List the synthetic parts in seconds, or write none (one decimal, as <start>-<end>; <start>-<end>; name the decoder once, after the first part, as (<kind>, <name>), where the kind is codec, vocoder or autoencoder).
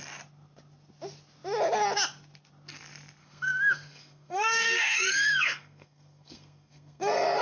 3.2-7.4 (codec, SNAC)